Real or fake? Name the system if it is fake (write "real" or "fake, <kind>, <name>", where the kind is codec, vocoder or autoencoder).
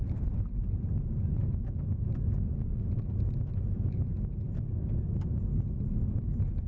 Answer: real